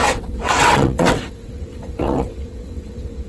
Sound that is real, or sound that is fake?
fake